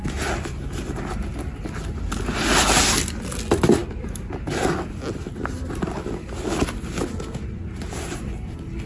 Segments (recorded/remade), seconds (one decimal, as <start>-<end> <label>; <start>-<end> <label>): 0.0-8.9 recorded